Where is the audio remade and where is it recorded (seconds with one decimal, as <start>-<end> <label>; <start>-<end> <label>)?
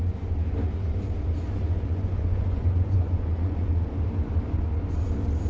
0.0-1.6 recorded; 1.6-3.9 remade; 3.9-5.5 recorded